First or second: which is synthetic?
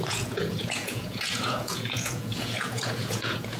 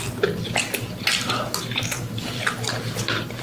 first